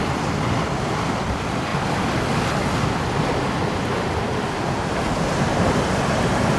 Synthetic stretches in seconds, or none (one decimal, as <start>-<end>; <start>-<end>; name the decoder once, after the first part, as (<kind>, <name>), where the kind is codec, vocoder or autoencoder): none